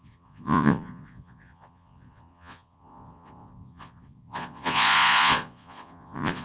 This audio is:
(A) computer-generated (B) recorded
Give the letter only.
A